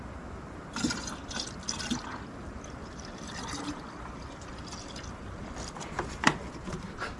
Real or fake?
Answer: real